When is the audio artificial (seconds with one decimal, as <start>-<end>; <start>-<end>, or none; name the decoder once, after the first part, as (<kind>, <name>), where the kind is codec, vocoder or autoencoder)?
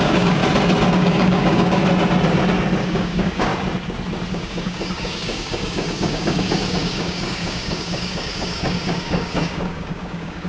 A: 0.0-0.4 (codec, DAC); 0.9-1.8; 2.8-3.5; 4.3-10.5